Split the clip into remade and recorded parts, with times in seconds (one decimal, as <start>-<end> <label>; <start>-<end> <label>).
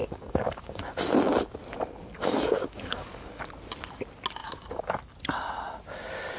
0.0-0.8 remade; 0.8-2.0 recorded; 2.0-3.5 remade; 3.5-4.4 recorded; 4.4-5.0 remade; 5.0-6.4 recorded